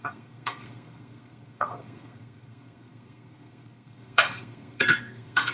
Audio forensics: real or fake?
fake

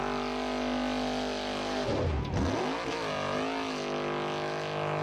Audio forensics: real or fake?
real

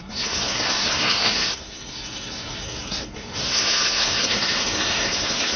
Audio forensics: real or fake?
fake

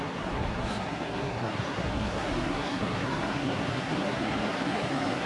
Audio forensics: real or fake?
fake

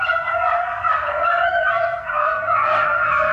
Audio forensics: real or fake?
fake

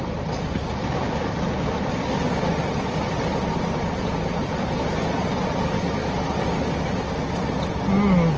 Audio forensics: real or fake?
real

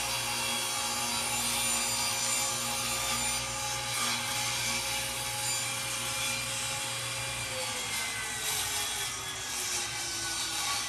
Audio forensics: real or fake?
real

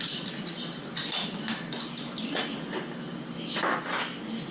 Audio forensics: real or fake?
real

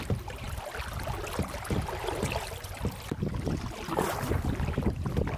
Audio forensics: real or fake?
real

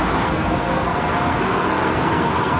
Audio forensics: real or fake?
fake